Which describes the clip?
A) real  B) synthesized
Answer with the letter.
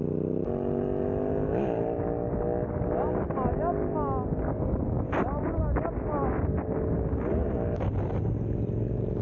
A